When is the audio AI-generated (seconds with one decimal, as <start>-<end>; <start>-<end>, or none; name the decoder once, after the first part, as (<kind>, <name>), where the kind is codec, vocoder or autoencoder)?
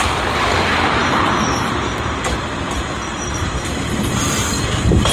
none